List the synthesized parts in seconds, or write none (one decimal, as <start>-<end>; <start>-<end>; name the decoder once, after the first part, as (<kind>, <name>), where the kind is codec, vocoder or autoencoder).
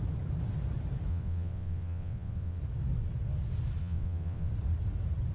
1.1-2.6 (vocoder, WaveNeXt); 3.8-4.5